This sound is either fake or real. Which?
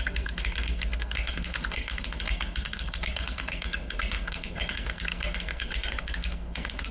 fake